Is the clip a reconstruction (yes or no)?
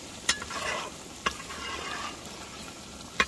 no